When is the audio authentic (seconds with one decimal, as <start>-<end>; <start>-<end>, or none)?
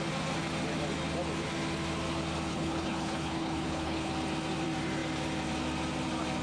0.0-2.5; 4.1-6.4